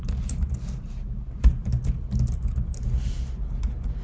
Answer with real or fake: real